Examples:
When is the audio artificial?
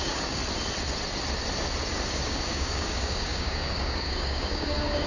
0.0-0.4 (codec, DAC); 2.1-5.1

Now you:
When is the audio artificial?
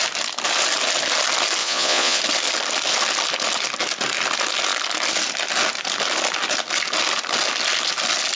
1.6-2.2 (vocoder, Vocos)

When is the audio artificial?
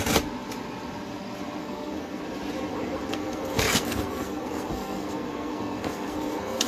1.6-2.2 (codec, SNAC); 2.7-6.7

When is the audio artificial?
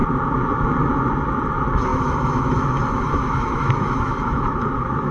1.9-5.1 (autoencoder, DAC-VAE)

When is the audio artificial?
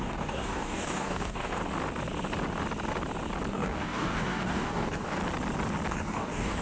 0.0-1.6 (codec, DAC); 3.5-5.2; 5.9-6.6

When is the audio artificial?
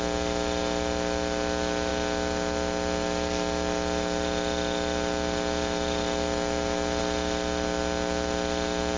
none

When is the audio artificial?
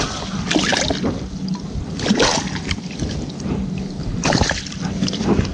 none